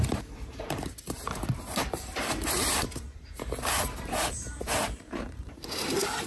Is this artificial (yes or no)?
yes